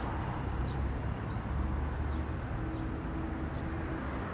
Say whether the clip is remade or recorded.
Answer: recorded